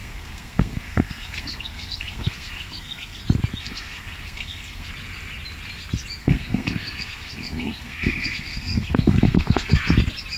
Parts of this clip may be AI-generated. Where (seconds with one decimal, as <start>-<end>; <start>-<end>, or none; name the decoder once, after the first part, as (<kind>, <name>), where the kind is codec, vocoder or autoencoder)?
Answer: 0.0-3.2 (codec, SNAC); 3.6-4.9; 6.2-9.8